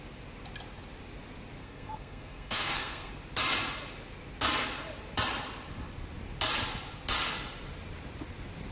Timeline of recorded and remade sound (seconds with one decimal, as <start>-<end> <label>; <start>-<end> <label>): 0.0-1.6 recorded; 1.6-3.1 remade; 3.1-8.7 recorded